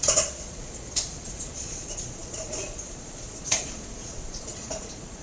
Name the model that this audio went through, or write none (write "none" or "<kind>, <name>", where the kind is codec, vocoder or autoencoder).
vocoder, Vocos